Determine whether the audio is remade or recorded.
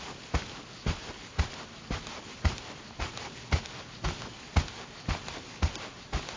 recorded